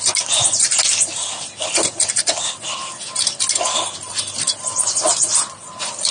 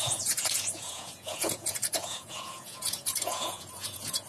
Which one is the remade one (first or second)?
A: second